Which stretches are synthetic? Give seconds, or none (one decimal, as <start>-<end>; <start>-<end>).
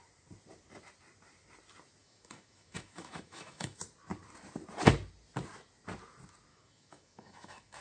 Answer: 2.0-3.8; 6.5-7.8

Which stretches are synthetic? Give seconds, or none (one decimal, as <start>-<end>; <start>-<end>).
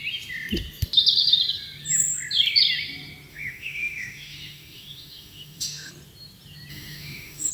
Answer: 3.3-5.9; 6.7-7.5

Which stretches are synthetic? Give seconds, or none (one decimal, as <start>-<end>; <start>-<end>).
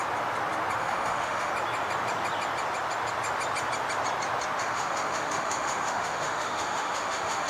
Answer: 0.8-1.5; 4.6-7.5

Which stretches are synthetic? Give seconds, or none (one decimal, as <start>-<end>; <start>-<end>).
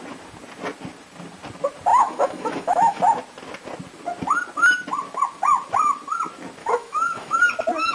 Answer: 1.9-3.0; 6.6-7.5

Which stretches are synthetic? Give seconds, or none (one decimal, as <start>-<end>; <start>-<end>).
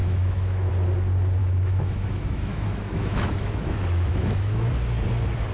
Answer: 0.0-0.7; 1.4-4.7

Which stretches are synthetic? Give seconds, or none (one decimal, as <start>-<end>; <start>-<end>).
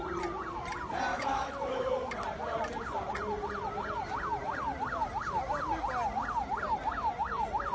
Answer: 1.1-1.9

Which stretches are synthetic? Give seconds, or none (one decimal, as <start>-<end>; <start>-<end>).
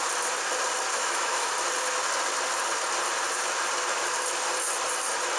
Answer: 0.9-1.5